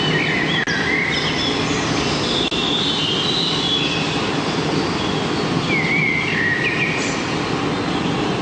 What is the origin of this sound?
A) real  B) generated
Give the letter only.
A